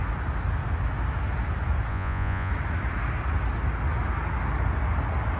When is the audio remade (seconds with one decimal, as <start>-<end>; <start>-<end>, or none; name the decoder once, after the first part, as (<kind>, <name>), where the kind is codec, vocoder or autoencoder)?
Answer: 1.9-2.5 (vocoder, Vocos)